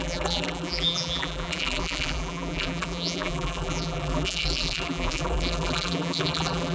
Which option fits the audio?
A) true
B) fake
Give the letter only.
B